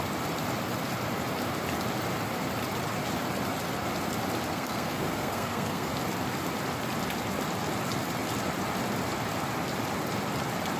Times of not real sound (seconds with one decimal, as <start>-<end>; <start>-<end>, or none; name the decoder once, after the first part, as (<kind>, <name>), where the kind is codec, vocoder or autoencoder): 4.5-5.9 (codec, SNAC)